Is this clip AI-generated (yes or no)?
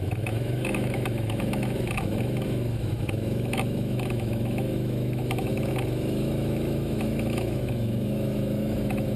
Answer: yes